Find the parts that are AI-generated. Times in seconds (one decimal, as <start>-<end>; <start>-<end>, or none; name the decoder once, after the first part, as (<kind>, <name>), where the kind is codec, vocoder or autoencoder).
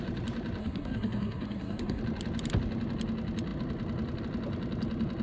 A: 0.6-2.0 (codec, SNAC)